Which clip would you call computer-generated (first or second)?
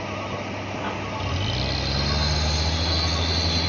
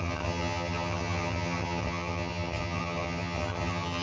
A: second